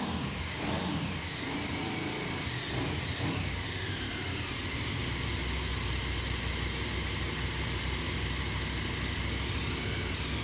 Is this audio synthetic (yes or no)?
no